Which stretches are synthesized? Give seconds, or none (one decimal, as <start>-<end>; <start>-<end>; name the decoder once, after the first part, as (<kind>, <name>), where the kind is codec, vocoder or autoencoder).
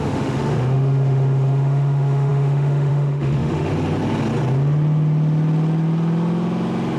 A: 0.0-3.7 (autoencoder, DAC-VAE)